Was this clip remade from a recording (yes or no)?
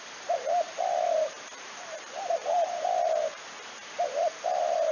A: yes